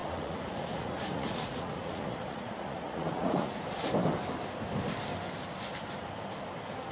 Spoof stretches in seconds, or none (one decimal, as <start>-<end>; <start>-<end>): 0.0-3.6